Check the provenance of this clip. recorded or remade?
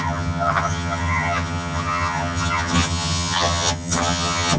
remade